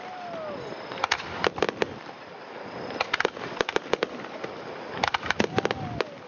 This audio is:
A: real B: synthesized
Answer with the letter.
A